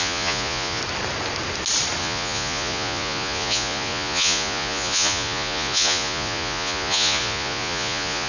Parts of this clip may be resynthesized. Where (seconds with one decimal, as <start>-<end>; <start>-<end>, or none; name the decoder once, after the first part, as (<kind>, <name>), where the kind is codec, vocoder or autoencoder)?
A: 0.0-0.8 (vocoder, Vocos); 2.0-8.3